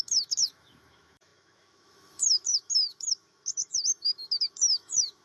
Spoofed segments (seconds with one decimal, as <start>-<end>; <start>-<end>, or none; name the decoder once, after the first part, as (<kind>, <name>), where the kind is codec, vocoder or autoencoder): 0.0-5.2 (autoencoder, DAC-VAE)